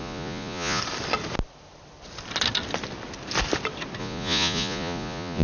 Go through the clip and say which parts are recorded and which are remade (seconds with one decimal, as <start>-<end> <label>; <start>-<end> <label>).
0.0-0.8 remade; 0.8-4.0 recorded; 4.0-5.4 remade